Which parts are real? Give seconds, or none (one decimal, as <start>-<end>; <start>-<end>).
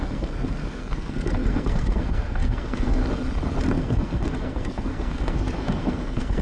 3.0-3.7